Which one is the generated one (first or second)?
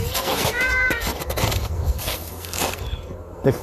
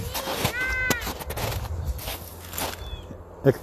first